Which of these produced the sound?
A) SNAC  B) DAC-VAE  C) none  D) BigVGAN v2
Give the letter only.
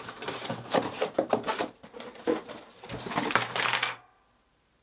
D